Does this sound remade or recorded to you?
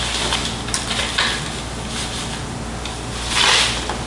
recorded